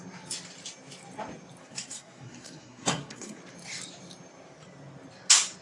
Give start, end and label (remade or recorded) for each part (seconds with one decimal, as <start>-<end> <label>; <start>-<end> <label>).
0.0-1.6 recorded; 1.6-3.4 remade; 3.4-5.6 recorded